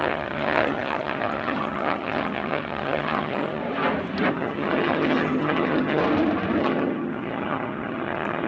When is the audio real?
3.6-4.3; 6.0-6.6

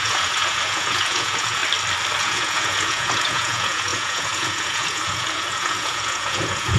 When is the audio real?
1.6-2.2

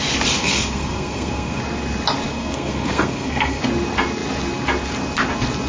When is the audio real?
0.0-0.4; 1.6-2.3; 3.6-5.7

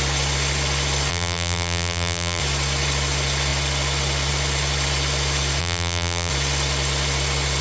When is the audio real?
0.0-1.1; 2.4-5.6; 6.3-7.6

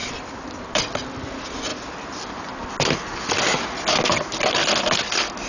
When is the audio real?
0.0-5.5

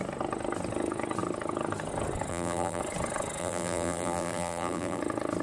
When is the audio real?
0.0-2.3; 2.8-3.4; 5.0-5.4